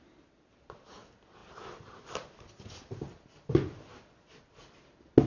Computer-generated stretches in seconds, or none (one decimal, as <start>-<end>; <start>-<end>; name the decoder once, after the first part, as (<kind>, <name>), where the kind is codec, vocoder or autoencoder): none